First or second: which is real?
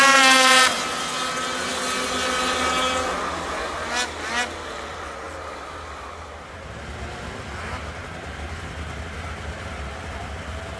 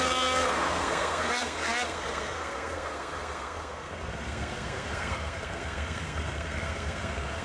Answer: first